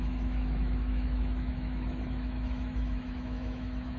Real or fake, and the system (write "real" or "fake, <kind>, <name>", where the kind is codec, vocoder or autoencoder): fake, autoencoder, DAC-VAE